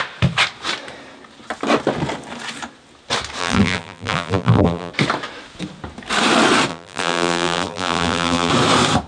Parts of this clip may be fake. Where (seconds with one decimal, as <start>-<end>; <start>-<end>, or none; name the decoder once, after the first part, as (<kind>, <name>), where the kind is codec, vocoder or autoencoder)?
3.4-4.9 (vocoder, BigVGAN v2); 6.7-8.5

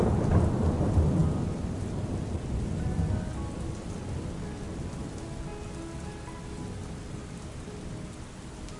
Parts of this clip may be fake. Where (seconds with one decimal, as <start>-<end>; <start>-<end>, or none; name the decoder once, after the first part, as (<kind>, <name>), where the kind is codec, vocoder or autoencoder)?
none

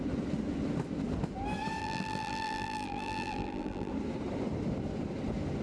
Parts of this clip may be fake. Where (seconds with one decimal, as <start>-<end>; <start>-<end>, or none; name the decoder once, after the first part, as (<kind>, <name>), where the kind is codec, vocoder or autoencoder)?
1.8-3.9 (vocoder, BigVGAN v2)

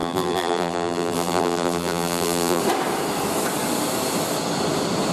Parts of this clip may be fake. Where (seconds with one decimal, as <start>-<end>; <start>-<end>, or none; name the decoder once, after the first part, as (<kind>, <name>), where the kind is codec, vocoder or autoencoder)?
0.0-2.6 (vocoder, BigVGAN v2)